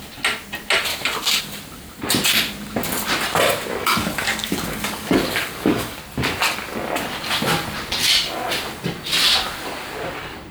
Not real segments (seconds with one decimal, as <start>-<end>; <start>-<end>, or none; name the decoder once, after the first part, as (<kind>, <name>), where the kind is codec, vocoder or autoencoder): 0.9-1.4 (codec, DAC); 3.8-6.0